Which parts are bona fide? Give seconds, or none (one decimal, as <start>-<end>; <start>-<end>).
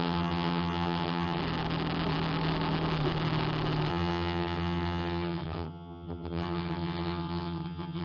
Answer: 1.4-3.9